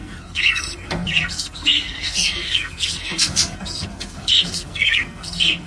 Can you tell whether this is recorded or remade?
remade